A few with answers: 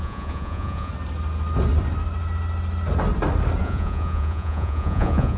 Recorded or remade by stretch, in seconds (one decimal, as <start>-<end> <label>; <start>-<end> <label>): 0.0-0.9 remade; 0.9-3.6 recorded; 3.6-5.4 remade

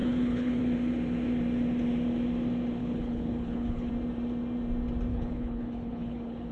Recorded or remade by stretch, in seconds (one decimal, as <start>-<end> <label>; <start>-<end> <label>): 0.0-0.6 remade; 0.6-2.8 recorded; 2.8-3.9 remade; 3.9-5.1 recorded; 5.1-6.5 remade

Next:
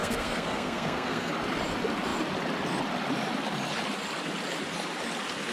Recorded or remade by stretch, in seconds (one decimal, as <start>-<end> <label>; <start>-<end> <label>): 0.0-1.3 remade; 1.3-5.5 recorded